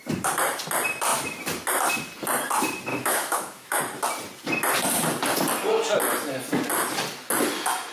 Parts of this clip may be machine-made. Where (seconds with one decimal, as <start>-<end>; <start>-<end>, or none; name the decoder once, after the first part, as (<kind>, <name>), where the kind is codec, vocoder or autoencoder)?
2.9-3.8 (autoencoder, DAC-VAE)